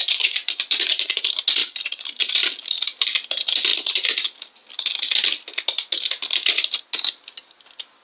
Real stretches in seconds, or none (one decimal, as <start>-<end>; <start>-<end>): 1.2-8.0